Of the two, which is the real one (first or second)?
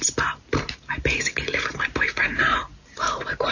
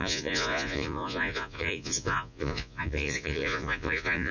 first